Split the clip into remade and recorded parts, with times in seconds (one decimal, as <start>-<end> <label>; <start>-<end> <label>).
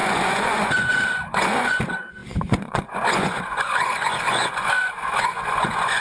0.0-6.0 remade